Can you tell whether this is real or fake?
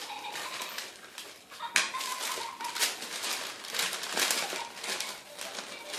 real